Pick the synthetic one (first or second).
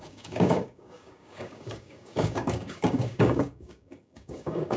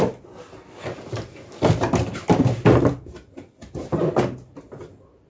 first